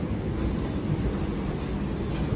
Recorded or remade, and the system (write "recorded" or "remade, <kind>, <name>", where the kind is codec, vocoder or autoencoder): recorded